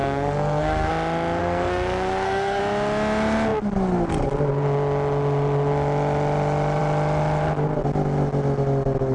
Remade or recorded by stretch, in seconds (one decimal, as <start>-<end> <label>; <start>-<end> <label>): 0.0-0.9 remade; 0.9-1.4 recorded; 1.4-2.6 remade; 2.6-9.1 recorded